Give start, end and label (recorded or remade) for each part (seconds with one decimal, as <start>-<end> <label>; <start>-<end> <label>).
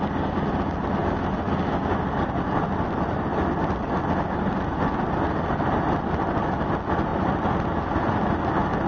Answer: 0.0-8.9 recorded